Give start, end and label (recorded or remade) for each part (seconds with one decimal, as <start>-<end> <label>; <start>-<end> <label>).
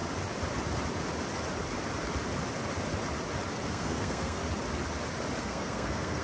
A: 0.0-3.7 recorded; 3.7-4.4 remade; 4.4-5.4 recorded; 5.4-6.2 remade